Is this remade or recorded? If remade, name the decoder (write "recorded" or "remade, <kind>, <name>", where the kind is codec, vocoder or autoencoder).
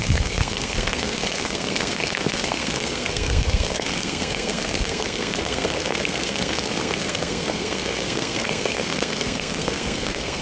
remade, codec, SNAC